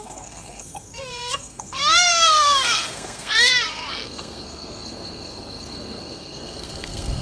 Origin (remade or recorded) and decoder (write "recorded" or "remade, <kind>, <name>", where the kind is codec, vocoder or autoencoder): remade, codec, SNAC